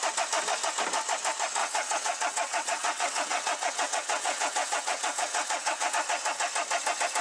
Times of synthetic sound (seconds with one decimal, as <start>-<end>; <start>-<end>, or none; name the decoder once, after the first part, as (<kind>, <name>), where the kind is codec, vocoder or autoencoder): 1.6-5.9 (vocoder, WaveNeXt)